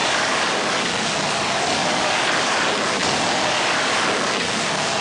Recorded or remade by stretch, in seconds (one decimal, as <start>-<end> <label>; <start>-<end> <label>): 0.0-5.0 remade